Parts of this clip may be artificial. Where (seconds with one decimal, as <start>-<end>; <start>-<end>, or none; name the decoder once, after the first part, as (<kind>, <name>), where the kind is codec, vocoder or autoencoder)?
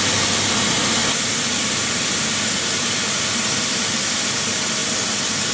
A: 0.0-5.5 (vocoder, BigVGAN v2)